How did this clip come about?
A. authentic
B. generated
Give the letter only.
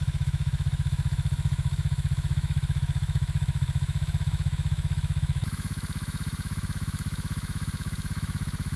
B